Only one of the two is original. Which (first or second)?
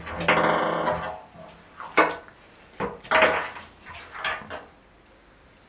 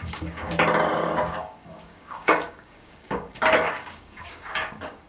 first